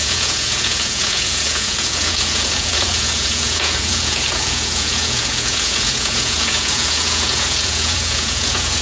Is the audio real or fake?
fake